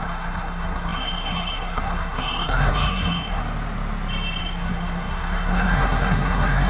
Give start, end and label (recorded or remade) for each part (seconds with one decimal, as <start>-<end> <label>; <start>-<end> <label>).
0.0-3.4 remade; 3.4-4.4 recorded; 4.4-6.7 remade